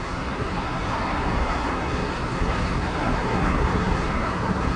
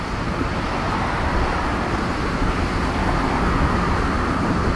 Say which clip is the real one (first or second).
second